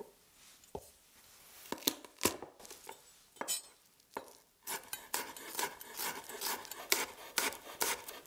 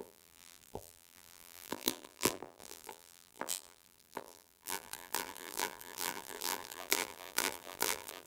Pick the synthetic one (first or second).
second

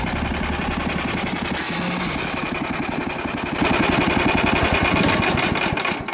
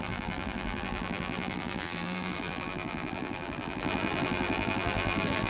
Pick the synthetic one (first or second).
second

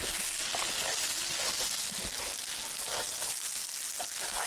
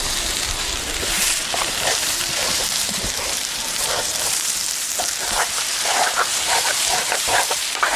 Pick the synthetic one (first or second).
second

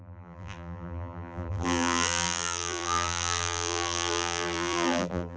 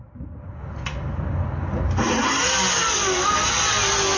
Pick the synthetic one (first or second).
first